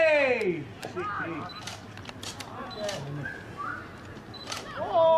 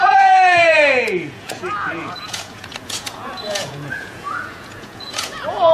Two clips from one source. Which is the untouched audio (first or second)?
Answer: first